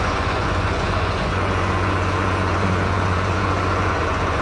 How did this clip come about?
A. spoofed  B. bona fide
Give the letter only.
A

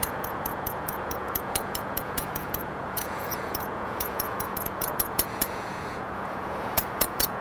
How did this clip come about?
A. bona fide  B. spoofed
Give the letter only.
B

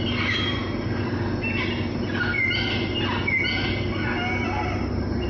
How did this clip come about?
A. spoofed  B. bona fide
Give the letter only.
B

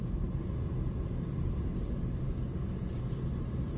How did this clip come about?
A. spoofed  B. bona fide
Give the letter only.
B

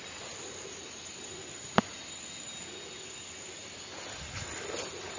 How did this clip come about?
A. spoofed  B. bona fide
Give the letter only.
B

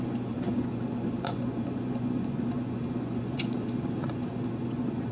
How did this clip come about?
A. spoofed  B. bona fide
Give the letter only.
A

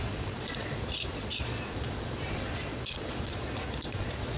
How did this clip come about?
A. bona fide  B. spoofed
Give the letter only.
B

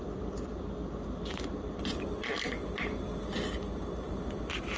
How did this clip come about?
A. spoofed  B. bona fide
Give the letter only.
B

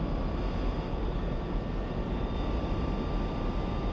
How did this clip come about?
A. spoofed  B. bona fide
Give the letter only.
B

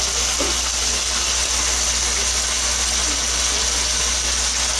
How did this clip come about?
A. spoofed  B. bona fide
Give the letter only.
B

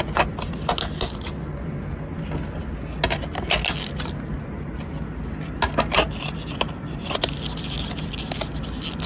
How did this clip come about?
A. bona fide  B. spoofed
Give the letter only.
A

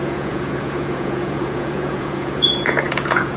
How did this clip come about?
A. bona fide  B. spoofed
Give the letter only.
B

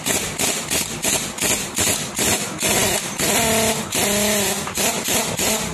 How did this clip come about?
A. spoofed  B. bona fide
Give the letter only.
B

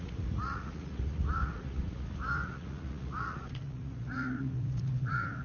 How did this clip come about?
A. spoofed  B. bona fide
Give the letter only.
A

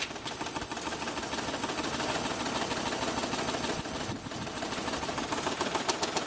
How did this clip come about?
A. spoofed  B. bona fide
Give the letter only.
B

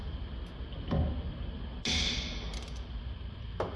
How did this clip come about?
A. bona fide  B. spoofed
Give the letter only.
A